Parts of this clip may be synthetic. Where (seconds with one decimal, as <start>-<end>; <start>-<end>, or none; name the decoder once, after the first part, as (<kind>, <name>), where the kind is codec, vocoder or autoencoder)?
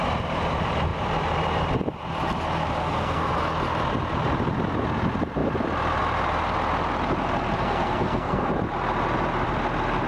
2.8-3.4 (codec, SNAC); 7.6-8.5